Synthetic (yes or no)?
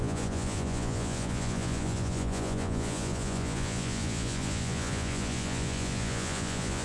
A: yes